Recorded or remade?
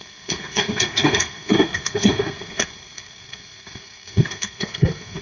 remade